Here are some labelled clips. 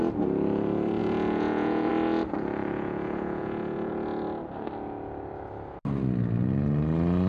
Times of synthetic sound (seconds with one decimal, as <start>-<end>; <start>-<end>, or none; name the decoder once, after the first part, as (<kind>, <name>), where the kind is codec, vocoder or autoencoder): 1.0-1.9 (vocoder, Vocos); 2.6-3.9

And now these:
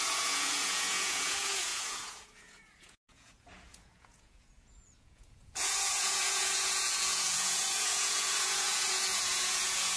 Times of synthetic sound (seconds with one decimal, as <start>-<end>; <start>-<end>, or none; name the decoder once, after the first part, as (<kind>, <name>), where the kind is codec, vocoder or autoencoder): 0.0-10.0 (vocoder, Vocos)

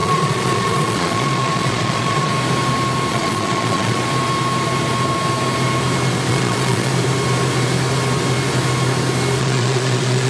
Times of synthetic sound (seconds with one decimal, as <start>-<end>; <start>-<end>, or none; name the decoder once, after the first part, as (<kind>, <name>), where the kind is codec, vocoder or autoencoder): 0.0-2.3 (vocoder, Vocos); 3.1-4.0; 6.3-6.9; 9.4-10.3

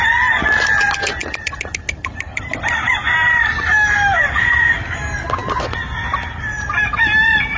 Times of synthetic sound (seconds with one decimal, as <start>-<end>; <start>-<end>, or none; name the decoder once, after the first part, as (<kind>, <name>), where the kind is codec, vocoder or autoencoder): none

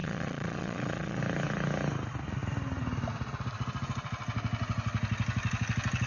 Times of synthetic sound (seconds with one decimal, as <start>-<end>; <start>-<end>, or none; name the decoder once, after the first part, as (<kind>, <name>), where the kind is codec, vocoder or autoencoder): 0.0-1.2 (vocoder, Vocos)

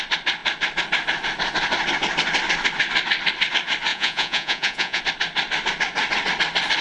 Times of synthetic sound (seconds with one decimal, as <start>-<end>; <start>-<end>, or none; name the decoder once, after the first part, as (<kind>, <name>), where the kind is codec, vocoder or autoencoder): 3.9-5.0 (vocoder, Vocos)